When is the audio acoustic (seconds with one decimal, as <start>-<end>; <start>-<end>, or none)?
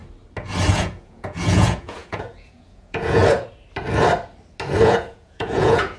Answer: 0.0-0.7; 3.2-4.8